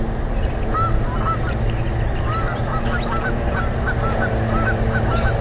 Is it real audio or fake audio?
real